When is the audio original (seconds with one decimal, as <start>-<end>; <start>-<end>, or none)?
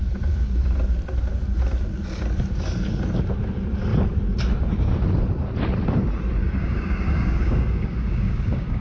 0.0-6.4